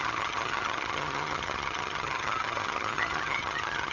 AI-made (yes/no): yes